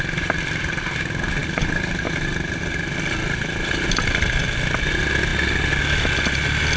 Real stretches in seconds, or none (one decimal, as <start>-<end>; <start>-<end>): 0.0-6.8